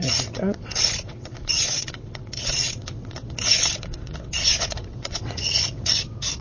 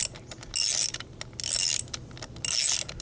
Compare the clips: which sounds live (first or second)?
second